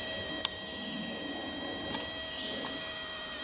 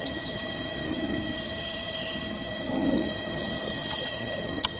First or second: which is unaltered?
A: first